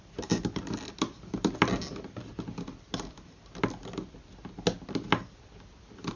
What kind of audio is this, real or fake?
real